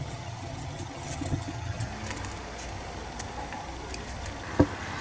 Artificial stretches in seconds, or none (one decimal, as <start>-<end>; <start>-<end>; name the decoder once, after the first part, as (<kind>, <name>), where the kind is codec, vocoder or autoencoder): 0.0-1.9 (vocoder, HiFi-GAN)